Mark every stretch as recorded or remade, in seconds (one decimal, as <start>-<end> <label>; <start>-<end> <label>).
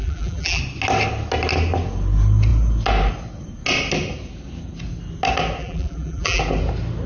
0.0-0.6 remade; 0.6-5.6 recorded; 5.6-6.4 remade; 6.4-7.1 recorded